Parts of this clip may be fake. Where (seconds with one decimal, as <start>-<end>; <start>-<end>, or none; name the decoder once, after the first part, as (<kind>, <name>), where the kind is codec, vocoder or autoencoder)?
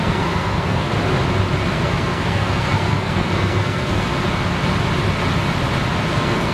0.0-0.9 (codec, SNAC); 1.7-4.1; 6.1-6.5